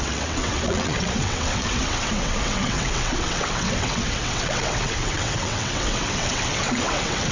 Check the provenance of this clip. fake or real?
fake